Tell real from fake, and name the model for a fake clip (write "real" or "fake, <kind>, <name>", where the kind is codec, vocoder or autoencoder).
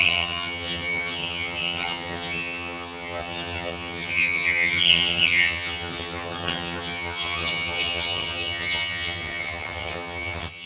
fake, vocoder, HiFi-GAN